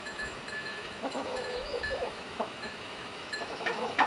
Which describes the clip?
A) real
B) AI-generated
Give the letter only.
B